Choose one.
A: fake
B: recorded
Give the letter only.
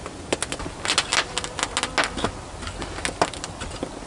B